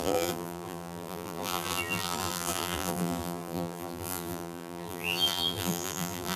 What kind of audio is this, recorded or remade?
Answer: remade